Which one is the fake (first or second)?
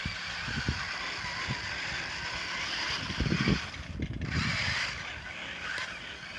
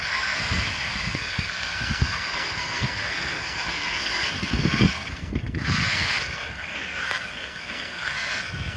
second